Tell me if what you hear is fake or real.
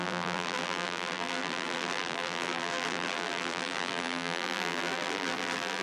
fake